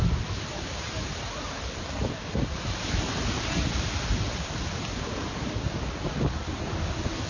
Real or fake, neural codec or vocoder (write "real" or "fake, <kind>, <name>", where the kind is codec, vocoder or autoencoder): real